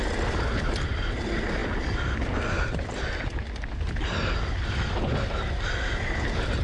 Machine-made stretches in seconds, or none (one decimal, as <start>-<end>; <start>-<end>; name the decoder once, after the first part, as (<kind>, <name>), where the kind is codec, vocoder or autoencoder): none